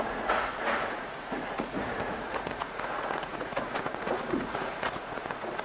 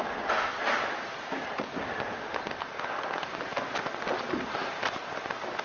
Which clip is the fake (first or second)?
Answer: first